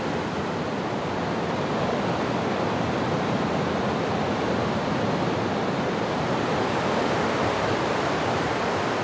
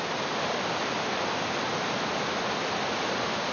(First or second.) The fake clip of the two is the first